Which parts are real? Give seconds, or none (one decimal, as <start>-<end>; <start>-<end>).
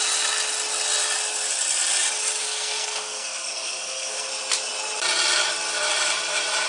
0.0-2.4; 4.3-6.7